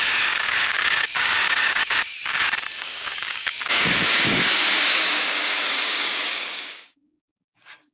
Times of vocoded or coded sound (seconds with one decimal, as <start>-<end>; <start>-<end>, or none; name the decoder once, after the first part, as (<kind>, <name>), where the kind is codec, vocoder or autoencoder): 0.0-2.1 (codec, DAC); 2.7-7.9